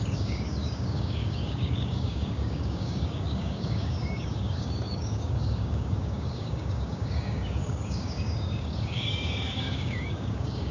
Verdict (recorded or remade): remade